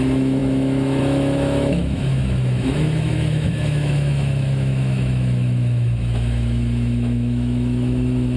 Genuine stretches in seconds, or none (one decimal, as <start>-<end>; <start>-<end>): none